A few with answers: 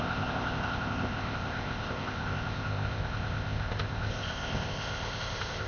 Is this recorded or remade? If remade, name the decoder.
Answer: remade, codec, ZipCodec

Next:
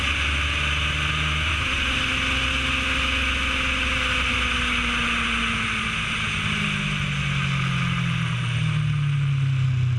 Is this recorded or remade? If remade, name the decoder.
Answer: recorded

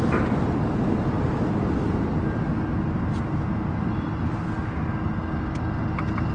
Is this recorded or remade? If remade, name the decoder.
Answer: recorded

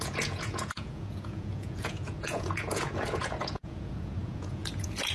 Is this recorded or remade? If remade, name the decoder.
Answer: remade, vocoder, Vocos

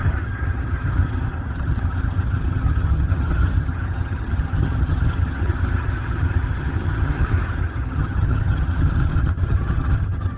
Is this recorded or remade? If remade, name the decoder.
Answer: remade, vocoder, HiFi-GAN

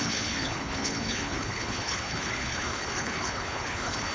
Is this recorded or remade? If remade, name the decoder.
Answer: remade, codec, HILCodec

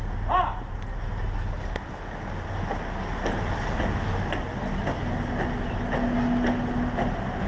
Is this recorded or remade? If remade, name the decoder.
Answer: recorded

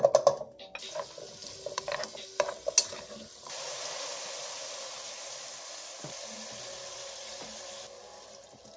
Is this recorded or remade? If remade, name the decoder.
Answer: recorded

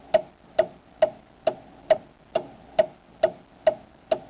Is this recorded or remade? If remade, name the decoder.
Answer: recorded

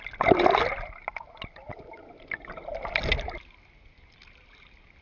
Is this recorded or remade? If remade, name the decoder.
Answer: recorded